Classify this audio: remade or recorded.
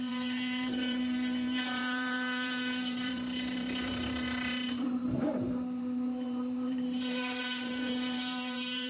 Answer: remade